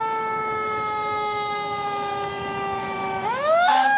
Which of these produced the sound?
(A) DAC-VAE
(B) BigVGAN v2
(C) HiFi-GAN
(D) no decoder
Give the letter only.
A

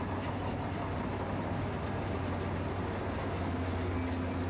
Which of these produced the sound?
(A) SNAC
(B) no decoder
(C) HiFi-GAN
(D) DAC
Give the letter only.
B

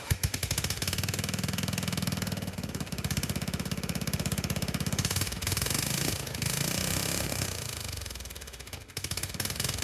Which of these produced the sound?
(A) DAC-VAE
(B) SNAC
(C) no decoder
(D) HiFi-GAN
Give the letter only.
A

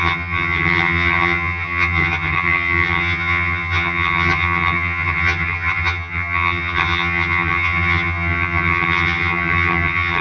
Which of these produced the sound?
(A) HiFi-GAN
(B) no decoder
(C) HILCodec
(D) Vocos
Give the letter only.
A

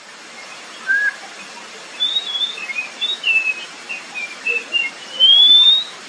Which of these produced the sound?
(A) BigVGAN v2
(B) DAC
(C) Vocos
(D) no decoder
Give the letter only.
A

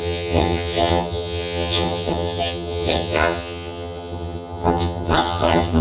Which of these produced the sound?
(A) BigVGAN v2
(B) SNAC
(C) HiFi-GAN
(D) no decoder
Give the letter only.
C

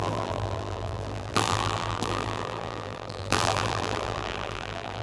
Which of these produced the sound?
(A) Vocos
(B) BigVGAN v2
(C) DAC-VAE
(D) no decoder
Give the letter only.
B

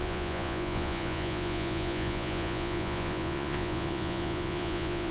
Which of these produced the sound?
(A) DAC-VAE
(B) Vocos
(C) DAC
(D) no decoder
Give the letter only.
B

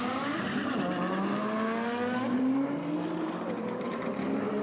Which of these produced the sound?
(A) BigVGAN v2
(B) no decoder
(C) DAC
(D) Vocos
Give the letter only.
A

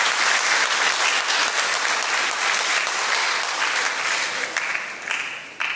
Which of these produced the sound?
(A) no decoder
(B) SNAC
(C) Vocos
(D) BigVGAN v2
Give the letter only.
A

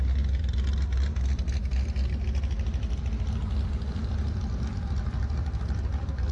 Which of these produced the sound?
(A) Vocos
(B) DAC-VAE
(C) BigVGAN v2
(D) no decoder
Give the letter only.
C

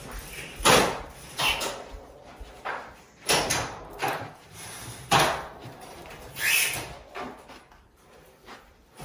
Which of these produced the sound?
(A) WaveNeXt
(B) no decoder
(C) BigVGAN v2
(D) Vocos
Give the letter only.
C